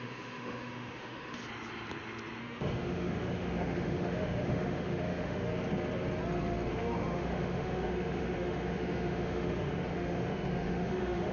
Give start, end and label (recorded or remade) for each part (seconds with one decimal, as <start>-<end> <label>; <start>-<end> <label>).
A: 0.0-1.4 remade; 1.4-2.4 recorded; 2.4-5.5 remade; 5.5-6.7 recorded; 6.7-11.3 remade